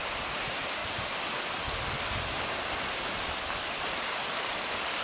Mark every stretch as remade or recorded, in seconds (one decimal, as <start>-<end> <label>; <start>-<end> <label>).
0.0-5.0 recorded